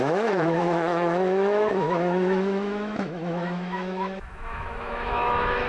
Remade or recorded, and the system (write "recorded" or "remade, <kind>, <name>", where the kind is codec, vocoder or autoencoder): remade, autoencoder, DAC-VAE